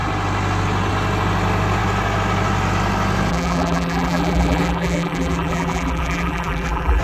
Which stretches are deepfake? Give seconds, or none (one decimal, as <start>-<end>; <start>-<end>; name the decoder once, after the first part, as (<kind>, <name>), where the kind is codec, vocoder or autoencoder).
3.3-7.0 (vocoder, BigVGAN v2)